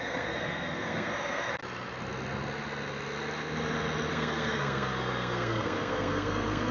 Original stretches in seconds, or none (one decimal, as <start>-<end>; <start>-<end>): 1.6-4.1